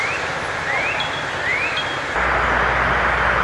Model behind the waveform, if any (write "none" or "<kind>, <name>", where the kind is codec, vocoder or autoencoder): none